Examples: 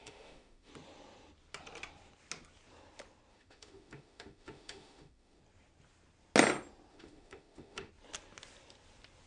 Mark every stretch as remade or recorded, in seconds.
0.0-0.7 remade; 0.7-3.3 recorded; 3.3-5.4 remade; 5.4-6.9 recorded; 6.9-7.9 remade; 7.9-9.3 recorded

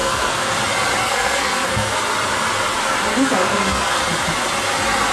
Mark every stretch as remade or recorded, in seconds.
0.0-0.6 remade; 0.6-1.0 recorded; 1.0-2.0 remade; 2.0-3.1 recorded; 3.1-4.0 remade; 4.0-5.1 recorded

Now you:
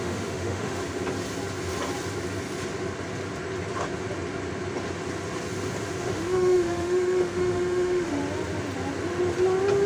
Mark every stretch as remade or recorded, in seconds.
0.0-0.8 remade; 0.8-6.0 recorded; 6.0-8.2 remade; 8.2-9.9 recorded